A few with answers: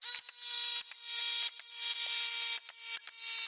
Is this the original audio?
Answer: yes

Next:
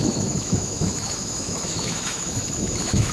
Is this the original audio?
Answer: no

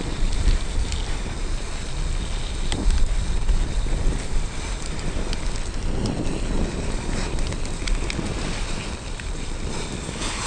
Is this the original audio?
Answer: yes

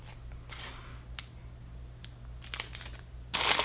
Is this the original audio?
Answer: yes